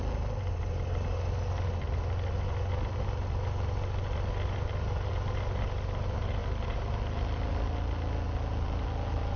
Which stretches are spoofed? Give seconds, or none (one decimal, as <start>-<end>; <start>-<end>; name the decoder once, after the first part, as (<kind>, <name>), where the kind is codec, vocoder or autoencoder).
6.4-6.9 (vocoder, BigVGAN v2)

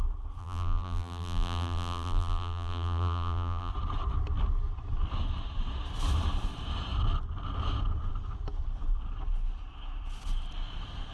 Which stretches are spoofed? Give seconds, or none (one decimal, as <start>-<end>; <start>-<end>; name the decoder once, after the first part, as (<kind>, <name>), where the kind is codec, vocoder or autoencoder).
0.4-3.7 (vocoder, BigVGAN v2)

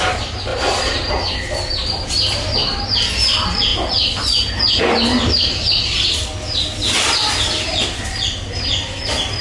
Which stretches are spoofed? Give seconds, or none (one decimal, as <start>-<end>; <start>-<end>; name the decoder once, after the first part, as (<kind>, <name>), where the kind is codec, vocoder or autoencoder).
0.5-1.1 (vocoder, BigVGAN v2)